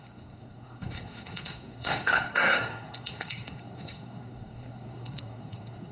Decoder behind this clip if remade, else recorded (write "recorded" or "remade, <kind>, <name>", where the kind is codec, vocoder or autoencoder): remade, codec, SNAC